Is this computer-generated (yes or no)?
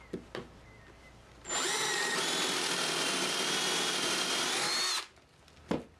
no